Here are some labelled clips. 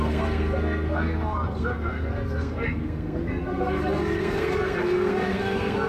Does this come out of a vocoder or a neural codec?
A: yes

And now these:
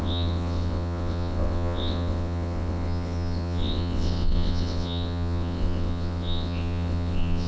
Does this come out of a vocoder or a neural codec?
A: yes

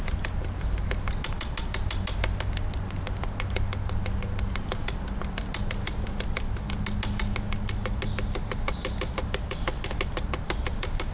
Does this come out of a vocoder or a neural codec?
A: no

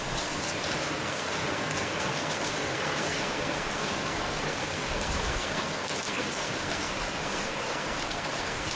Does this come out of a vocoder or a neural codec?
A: yes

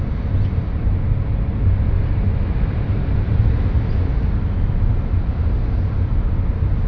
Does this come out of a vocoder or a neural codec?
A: no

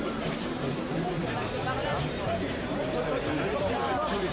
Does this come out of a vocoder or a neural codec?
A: yes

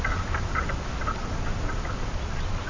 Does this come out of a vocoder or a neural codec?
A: no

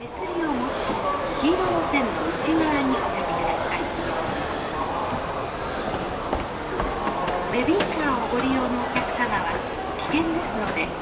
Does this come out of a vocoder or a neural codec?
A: no